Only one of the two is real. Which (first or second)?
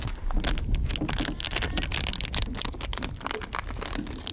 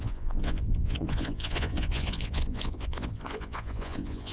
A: first